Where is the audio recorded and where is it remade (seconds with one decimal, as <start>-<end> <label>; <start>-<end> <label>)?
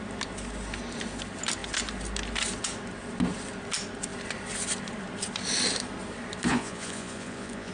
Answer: 0.0-6.5 recorded; 6.5-7.7 remade